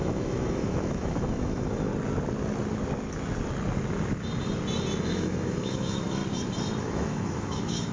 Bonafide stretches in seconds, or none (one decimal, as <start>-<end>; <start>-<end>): 1.9-5.0; 6.2-6.8